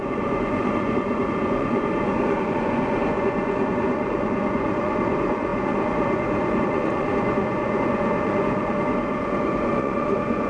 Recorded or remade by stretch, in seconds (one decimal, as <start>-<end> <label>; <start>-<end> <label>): 0.0-10.5 remade